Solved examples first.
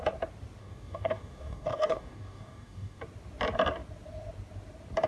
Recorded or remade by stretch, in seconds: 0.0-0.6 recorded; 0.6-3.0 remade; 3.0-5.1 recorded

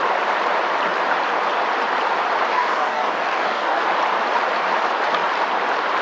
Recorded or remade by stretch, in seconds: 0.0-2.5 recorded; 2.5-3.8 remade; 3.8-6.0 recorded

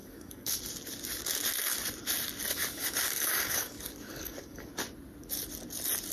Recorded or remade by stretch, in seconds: 0.0-0.6 remade; 0.6-2.5 recorded; 2.5-4.7 remade; 4.7-6.1 recorded

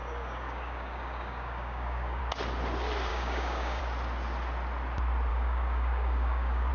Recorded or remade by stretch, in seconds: 0.0-2.2 remade; 2.2-3.1 recorded; 3.1-3.8 remade; 3.8-5.3 recorded; 5.3-6.7 remade